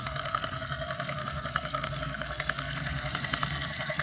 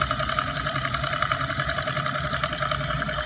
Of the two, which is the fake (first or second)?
first